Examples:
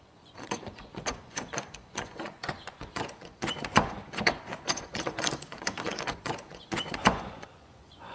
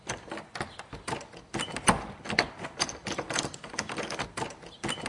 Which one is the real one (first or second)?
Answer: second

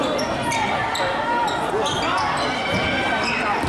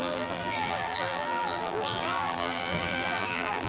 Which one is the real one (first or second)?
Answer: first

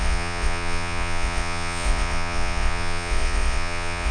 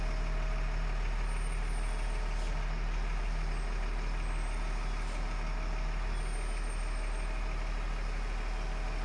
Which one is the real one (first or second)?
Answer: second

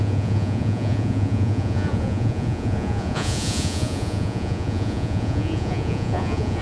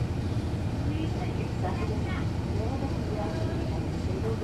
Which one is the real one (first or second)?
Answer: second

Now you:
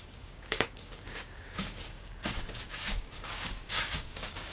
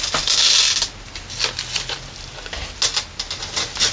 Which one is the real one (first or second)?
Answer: second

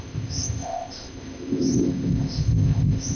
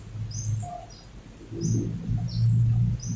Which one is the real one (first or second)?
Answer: second